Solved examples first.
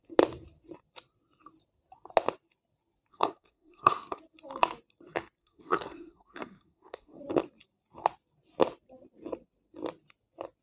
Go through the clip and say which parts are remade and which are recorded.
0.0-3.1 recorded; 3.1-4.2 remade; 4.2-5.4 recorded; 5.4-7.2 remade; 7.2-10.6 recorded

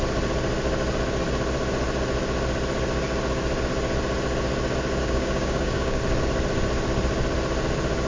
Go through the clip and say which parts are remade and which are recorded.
0.0-5.0 recorded; 5.0-6.0 remade; 6.0-8.1 recorded